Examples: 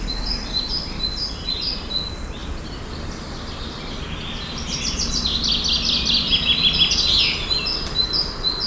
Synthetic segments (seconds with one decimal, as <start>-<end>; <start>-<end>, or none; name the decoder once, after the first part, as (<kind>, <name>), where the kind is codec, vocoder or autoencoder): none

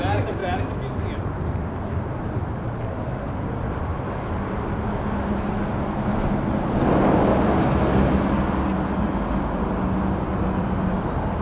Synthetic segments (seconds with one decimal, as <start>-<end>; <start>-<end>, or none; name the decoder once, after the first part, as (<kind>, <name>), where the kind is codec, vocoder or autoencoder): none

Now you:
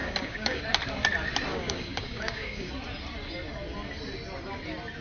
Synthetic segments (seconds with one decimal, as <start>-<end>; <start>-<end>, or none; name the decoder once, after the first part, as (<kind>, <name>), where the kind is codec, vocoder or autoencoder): 0.0-0.6 (codec, DAC); 1.5-2.7